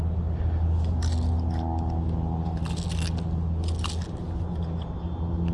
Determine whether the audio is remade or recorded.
recorded